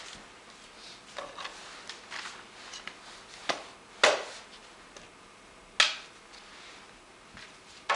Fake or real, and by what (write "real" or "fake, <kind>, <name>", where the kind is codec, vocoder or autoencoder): real